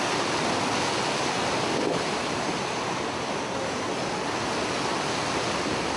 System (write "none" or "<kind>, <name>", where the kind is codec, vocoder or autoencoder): none